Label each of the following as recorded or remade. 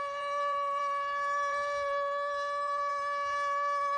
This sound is remade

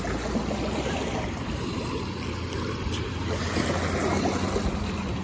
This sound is recorded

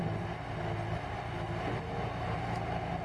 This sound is recorded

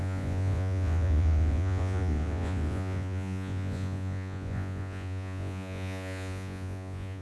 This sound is remade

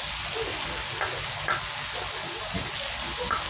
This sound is recorded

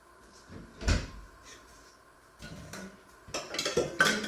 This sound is recorded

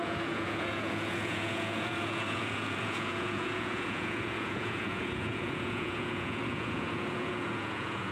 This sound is remade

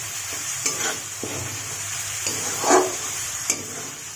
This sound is remade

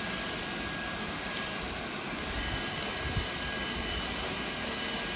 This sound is recorded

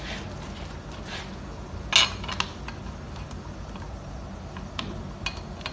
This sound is recorded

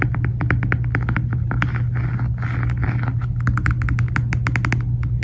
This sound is recorded